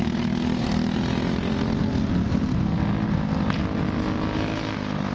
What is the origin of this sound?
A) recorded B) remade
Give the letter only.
A